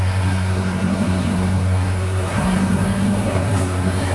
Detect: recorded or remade remade